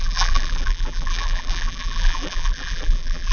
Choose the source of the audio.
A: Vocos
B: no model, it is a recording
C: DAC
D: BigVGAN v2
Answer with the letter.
D